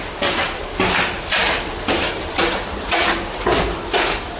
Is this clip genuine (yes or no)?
yes